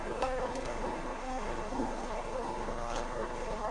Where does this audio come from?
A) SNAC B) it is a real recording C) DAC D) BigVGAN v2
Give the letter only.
A